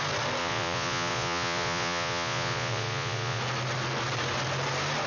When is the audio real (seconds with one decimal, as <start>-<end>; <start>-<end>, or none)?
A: 0.0-0.4; 3.4-5.1

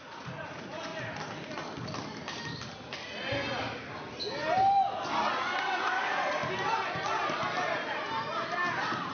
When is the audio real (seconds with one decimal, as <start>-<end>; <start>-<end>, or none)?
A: 0.9-5.3; 6.4-9.1

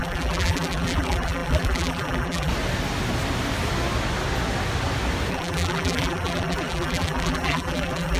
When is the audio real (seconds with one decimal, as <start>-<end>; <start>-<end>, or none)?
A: 2.5-5.3

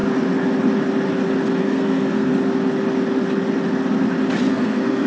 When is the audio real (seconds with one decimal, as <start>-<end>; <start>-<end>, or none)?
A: 0.0-1.6; 2.3-4.5

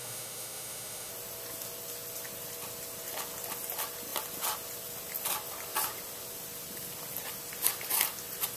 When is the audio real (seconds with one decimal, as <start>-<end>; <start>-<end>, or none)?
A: 1.1-8.6

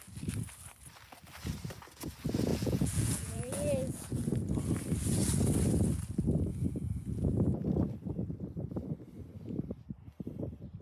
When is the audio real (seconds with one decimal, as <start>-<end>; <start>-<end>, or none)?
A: 0.0-2.5; 4.2-6.5; 7.4-10.8